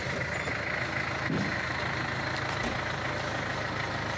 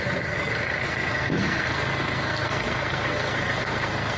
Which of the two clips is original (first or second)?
first